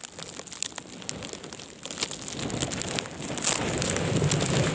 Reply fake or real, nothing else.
real